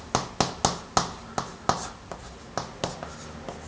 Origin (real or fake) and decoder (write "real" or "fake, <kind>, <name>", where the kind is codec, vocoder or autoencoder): real